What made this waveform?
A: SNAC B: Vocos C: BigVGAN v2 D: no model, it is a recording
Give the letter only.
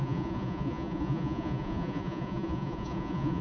B